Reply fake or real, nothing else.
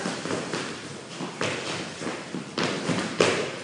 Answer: real